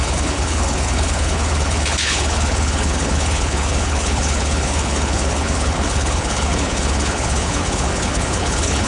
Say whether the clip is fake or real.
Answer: fake